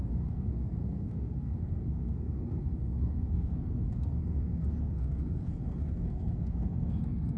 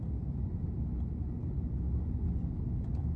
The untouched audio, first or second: second